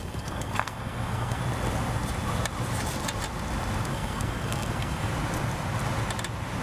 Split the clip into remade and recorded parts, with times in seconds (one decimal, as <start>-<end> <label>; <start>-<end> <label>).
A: 0.0-1.4 remade; 1.4-3.9 recorded; 3.9-5.1 remade; 5.1-6.6 recorded